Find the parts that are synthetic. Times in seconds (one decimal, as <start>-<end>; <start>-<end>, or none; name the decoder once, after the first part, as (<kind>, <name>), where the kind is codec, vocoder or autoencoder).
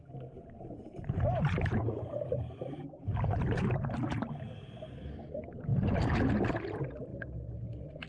0.0-4.9 (vocoder, BigVGAN v2); 5.7-6.3